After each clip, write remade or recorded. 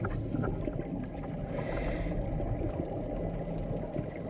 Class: recorded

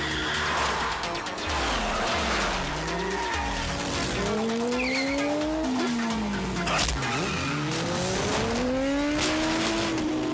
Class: recorded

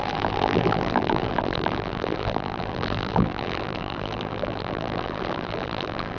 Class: remade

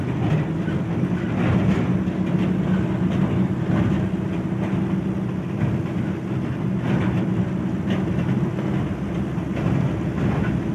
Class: recorded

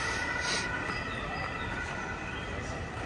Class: remade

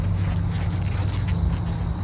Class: recorded